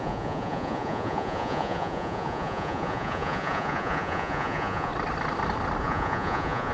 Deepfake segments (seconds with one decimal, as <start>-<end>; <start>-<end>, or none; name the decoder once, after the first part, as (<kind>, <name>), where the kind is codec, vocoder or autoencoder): 0.0-4.9 (vocoder, Vocos); 5.8-6.7